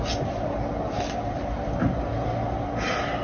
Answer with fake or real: real